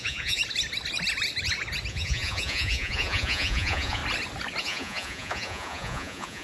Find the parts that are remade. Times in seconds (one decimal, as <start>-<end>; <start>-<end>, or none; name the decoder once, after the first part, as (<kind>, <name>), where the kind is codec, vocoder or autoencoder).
0.0-0.4 (vocoder, Vocos); 1.9-4.0; 4.6-6.4